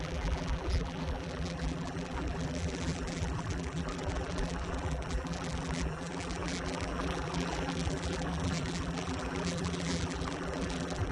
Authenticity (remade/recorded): remade